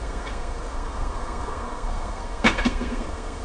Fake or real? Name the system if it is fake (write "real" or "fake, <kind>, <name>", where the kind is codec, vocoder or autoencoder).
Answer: fake, codec, SNAC